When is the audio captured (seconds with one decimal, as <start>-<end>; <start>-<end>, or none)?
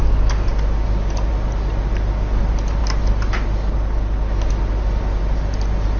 0.0-6.0